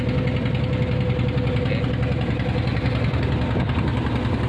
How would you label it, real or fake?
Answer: real